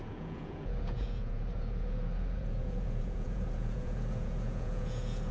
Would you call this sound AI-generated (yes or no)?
yes